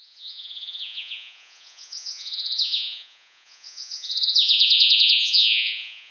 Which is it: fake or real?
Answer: fake